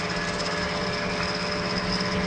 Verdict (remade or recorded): recorded